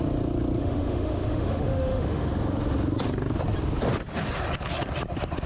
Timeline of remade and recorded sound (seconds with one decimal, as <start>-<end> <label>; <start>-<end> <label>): 0.0-0.6 recorded; 0.6-2.3 remade; 2.3-5.5 recorded